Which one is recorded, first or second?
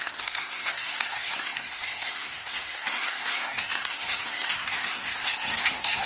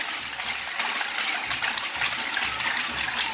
second